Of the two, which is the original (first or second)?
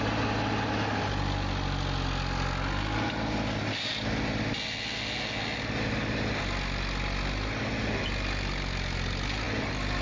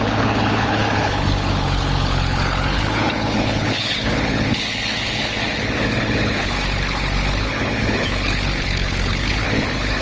first